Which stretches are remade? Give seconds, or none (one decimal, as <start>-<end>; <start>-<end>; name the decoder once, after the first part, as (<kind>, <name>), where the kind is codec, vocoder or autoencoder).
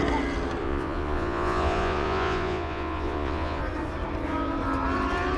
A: 0.6-3.6 (vocoder, Vocos)